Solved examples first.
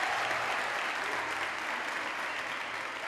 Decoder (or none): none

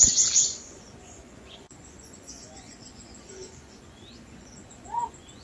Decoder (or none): vocoder, Vocos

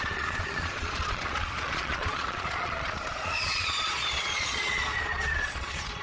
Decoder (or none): vocoder, Vocos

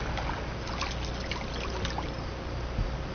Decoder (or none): none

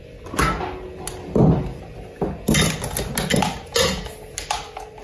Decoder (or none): none